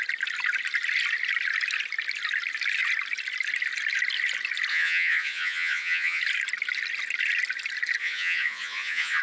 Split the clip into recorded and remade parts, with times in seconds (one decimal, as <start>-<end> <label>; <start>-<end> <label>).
0.0-4.7 recorded; 4.7-6.2 remade; 6.2-8.0 recorded; 8.0-9.2 remade